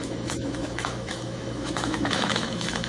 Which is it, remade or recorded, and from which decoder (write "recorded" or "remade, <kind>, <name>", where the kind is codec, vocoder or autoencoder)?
remade, autoencoder, DAC-VAE